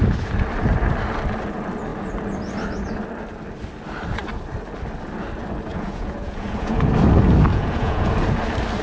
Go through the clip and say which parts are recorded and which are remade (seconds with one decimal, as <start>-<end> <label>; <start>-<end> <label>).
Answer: 0.0-5.7 recorded; 5.7-6.9 remade; 6.9-7.5 recorded; 7.5-8.1 remade; 8.1-8.8 recorded